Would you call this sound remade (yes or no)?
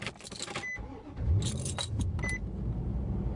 no